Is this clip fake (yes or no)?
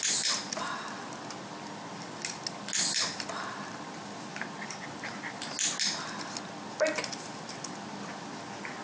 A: no